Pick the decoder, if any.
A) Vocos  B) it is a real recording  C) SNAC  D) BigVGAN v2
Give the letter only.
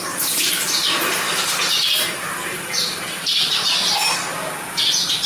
D